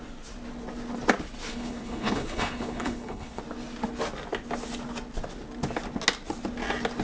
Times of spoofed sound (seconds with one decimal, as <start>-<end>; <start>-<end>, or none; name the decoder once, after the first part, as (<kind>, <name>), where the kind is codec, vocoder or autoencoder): 1.5-3.4 (codec, HILCodec)